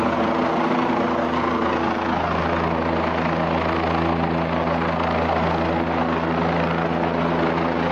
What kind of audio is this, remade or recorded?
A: recorded